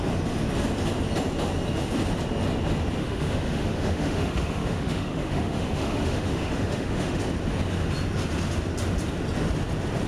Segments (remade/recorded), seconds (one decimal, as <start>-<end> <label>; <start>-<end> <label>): 0.0-3.0 recorded; 3.0-7.2 remade; 7.2-10.1 recorded